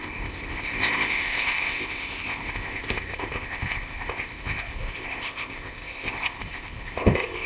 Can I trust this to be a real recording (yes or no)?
no